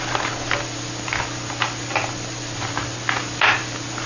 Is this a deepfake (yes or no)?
no